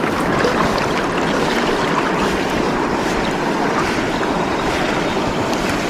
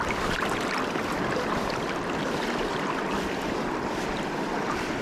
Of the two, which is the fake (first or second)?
second